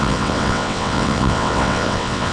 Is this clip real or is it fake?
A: fake